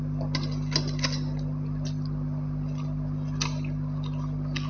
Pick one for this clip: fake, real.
real